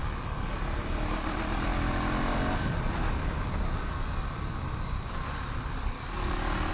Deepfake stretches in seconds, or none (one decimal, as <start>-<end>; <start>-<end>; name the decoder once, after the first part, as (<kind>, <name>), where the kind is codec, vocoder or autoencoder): none